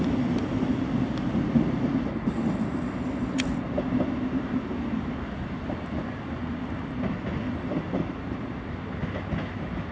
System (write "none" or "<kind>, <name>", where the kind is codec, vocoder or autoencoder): none